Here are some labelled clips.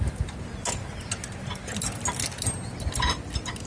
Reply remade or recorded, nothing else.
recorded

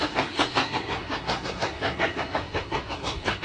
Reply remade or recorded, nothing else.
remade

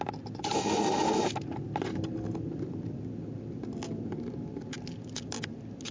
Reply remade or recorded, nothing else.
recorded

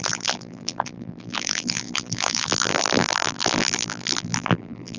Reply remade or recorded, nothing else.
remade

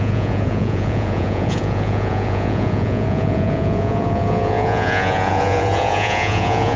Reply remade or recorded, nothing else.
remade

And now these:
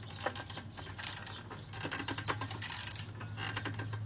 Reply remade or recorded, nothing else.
recorded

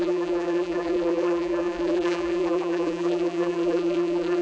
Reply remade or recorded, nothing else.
remade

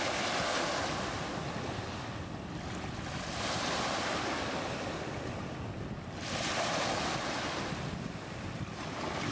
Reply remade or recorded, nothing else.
recorded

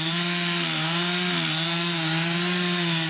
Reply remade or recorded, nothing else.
recorded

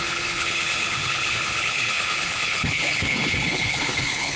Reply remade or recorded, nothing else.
remade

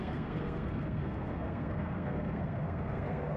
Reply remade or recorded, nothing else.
remade